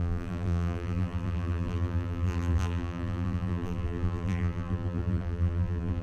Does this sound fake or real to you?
fake